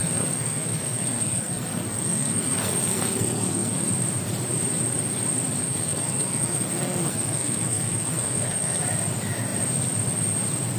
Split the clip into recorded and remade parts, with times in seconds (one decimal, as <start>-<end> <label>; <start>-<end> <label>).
0.0-3.9 remade; 3.9-5.6 recorded; 5.6-8.8 remade; 8.8-10.8 recorded